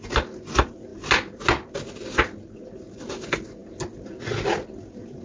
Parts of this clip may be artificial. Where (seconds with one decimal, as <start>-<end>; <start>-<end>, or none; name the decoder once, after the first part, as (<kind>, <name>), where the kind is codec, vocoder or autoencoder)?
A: none